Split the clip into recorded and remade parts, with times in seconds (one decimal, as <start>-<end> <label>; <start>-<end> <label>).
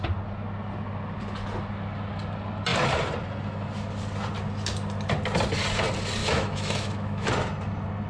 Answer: 0.0-6.2 recorded; 6.2-7.3 remade; 7.3-8.1 recorded